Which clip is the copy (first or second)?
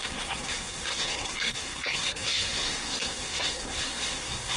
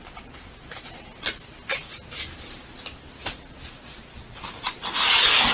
first